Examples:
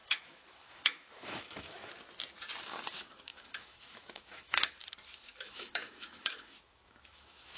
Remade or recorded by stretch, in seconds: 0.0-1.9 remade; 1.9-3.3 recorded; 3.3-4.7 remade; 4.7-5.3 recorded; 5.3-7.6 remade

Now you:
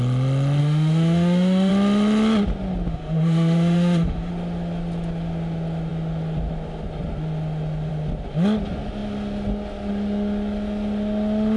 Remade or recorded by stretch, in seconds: 0.0-0.6 recorded; 0.6-1.7 remade; 1.7-2.9 recorded; 2.9-4.3 remade; 4.3-11.6 recorded